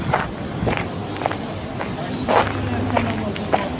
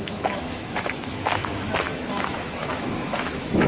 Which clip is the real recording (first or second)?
first